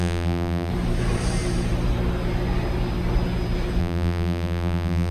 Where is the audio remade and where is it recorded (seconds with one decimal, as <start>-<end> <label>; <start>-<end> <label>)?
0.0-0.7 remade; 0.7-3.8 recorded; 3.8-5.1 remade